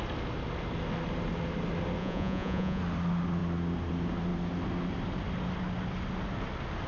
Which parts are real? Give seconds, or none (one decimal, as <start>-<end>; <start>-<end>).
0.0-2.0; 2.8-6.9